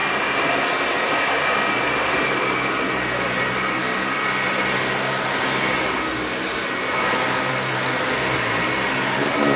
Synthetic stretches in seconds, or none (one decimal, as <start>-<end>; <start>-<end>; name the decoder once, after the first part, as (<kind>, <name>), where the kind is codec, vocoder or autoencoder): none